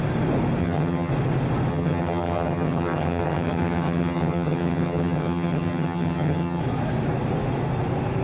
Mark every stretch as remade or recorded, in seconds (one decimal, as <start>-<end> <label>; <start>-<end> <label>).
0.0-0.6 recorded; 0.6-1.1 remade; 1.1-1.7 recorded; 1.7-6.6 remade; 6.6-8.2 recorded